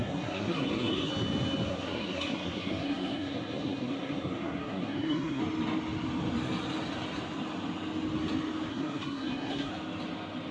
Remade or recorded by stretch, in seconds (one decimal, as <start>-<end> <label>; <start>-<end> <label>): 0.0-1.1 remade; 1.1-1.7 recorded; 1.7-5.4 remade; 5.4-8.7 recorded; 8.7-9.7 remade; 9.7-10.5 recorded